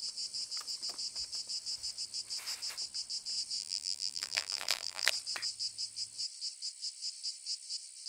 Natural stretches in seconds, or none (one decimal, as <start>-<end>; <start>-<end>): 0.0-3.6; 5.1-8.1